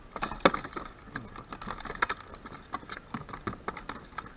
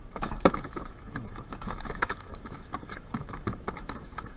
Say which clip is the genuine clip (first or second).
first